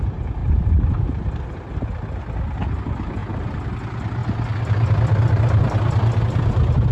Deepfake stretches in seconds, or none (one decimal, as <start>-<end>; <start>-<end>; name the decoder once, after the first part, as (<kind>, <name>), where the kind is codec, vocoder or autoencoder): 0.4-1.7 (vocoder, BigVGAN v2)